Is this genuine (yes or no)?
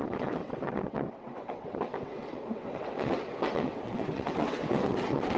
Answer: no